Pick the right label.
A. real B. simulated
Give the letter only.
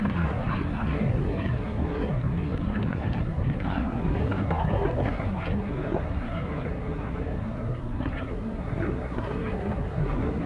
B